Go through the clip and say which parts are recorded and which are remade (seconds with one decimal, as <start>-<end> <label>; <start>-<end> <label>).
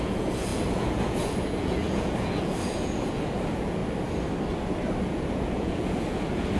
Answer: 0.0-3.8 remade; 3.8-5.0 recorded; 5.0-6.6 remade